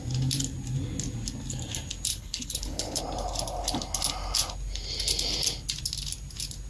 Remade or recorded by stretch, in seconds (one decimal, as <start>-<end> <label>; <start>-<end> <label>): 0.0-2.1 recorded; 2.1-3.0 remade; 3.0-6.7 recorded